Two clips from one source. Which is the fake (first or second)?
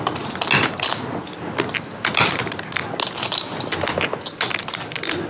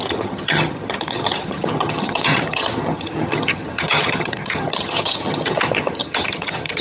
second